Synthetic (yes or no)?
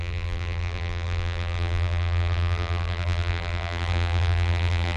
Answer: yes